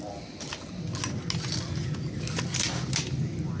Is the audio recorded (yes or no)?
yes